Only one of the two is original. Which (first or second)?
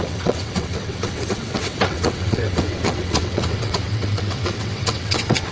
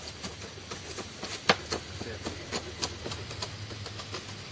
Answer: second